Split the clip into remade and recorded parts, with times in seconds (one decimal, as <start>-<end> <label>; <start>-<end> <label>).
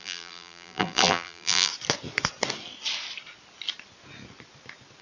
0.0-1.7 remade; 1.7-5.0 recorded